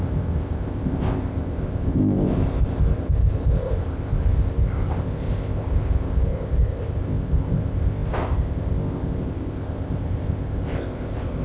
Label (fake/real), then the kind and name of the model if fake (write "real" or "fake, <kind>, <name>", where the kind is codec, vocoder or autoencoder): fake, codec, ZipCodec